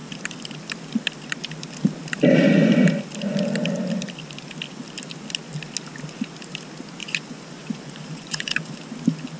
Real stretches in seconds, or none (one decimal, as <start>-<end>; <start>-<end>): 0.0-7.0; 8.7-9.4